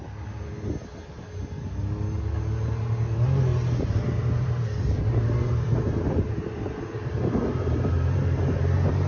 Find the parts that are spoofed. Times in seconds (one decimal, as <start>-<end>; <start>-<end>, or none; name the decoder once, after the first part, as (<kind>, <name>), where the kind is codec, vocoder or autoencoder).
3.5-8.6 (vocoder, BigVGAN v2)